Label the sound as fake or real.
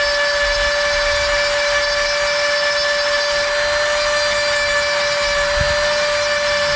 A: real